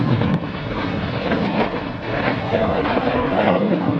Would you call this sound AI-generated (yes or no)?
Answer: yes